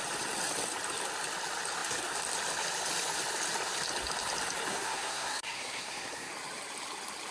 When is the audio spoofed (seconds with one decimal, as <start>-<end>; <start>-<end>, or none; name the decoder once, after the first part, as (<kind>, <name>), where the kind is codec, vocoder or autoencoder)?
4.7-6.3 (codec, SNAC)